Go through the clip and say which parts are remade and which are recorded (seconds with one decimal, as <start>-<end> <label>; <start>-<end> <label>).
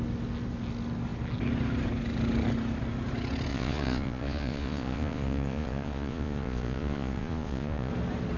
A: 0.0-3.5 recorded; 3.5-7.9 remade; 7.9-8.4 recorded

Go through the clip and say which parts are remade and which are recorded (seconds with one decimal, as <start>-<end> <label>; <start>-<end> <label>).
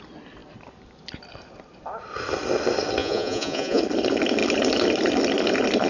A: 0.0-3.0 recorded; 3.0-3.8 remade; 3.8-5.9 recorded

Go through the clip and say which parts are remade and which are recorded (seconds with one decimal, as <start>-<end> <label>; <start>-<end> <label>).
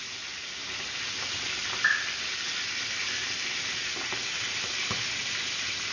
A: 0.0-5.9 recorded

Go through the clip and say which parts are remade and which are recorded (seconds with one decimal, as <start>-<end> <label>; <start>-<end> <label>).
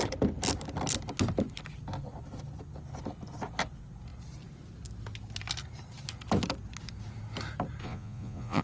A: 0.0-7.8 recorded; 7.8-8.6 remade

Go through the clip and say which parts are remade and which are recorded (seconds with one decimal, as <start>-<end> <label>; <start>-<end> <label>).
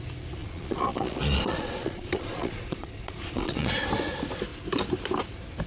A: 0.0-0.4 recorded; 0.4-3.7 remade; 3.7-5.7 recorded